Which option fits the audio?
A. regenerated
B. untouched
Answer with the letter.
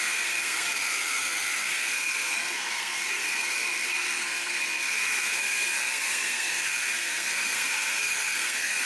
A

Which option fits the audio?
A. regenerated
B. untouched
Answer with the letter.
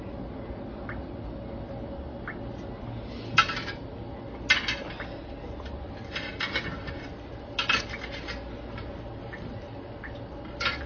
B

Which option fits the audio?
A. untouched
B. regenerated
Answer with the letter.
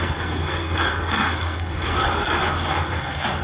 B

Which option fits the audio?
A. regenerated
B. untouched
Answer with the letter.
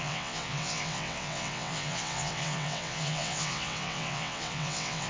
A